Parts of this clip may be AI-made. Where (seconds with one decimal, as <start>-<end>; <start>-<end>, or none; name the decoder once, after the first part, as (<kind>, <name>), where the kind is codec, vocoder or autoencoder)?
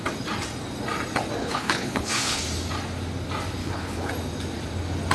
1.4-2.4 (codec, HILCodec); 3.6-4.1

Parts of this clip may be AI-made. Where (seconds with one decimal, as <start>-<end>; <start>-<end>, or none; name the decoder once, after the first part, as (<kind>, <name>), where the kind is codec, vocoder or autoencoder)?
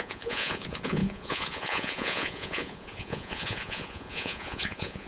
0.0-5.1 (vocoder, Vocos)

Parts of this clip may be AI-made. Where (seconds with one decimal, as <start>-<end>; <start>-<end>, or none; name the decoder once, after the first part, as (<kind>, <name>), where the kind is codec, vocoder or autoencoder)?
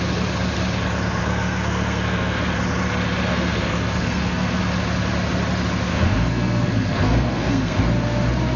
1.2-2.5 (codec, SNAC); 3.3-4.6; 5.9-7.8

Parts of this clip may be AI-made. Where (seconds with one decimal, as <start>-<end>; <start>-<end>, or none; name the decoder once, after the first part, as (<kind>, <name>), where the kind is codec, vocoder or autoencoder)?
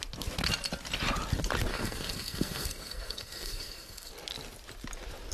1.7-4.1 (codec, SNAC)